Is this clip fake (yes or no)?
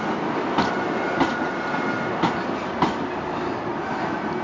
no